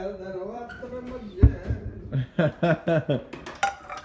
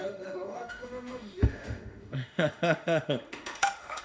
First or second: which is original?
first